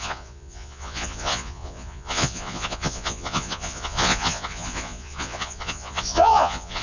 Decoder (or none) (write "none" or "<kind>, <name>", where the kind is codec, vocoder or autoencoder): vocoder, Vocos